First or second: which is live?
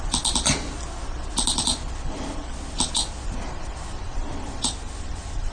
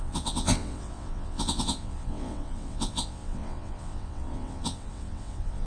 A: first